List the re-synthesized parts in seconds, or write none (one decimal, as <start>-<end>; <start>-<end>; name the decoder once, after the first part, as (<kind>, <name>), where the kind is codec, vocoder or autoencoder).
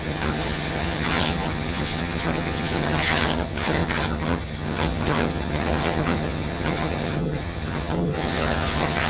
0.0-9.1 (vocoder, HiFi-GAN)